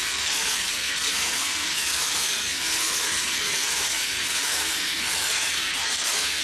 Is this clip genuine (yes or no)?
no